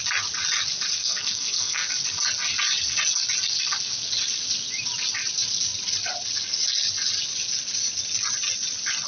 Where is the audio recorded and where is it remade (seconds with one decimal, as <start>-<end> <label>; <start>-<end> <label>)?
0.0-1.0 recorded; 1.0-1.9 remade; 1.9-9.1 recorded